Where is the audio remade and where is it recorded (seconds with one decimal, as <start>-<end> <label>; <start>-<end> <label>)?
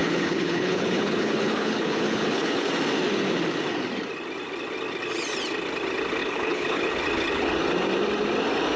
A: 0.0-2.7 remade; 2.7-6.2 recorded; 6.2-6.9 remade; 6.9-8.8 recorded